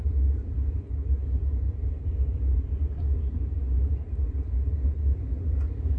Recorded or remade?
remade